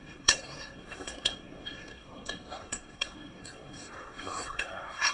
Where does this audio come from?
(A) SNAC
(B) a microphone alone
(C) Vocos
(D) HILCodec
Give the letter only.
A